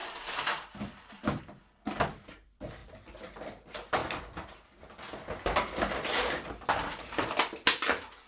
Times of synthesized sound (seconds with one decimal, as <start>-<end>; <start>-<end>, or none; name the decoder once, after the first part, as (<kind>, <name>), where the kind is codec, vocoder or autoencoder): 0.0-8.3 (vocoder, BigVGAN v2)